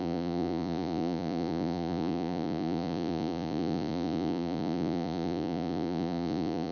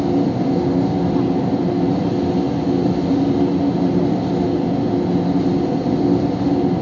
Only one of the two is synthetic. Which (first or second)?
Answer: first